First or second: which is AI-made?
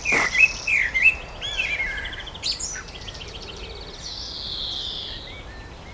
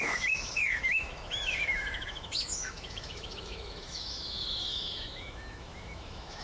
second